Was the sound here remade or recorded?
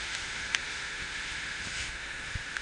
remade